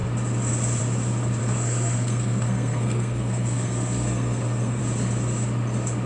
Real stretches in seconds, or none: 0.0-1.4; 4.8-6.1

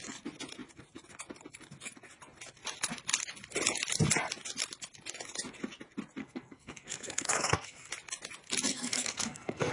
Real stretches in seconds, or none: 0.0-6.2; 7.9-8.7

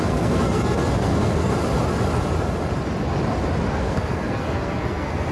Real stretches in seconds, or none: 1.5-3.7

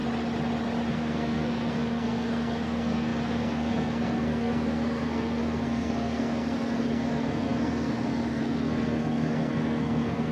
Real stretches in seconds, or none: 0.0-0.9

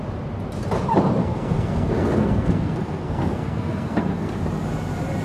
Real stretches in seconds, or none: 0.0-1.2; 4.3-5.2

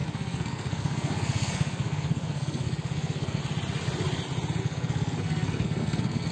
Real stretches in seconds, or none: 3.4-4.6

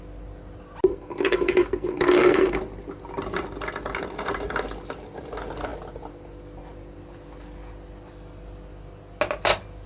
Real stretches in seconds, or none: 0.0-0.9; 2.6-9.9

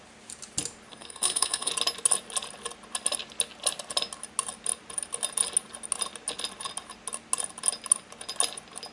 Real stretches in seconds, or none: 0.0-0.9; 1.7-8.9